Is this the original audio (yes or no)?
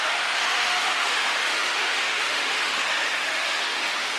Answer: no